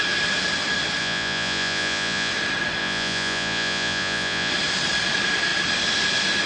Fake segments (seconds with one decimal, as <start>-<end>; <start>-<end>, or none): 1.0-2.3; 2.8-4.5

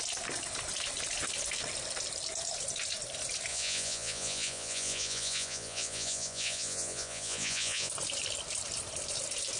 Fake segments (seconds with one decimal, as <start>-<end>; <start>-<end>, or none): 3.5-7.9

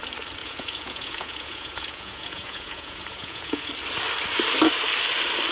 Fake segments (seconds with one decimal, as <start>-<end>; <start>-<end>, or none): 0.4-3.7